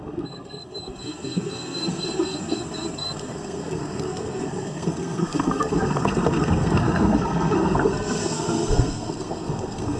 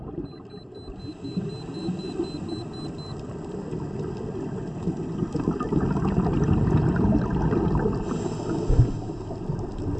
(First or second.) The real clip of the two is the second